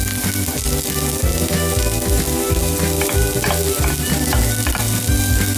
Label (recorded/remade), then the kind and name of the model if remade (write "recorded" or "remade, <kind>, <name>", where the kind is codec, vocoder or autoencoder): recorded